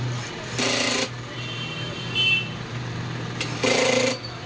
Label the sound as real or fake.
real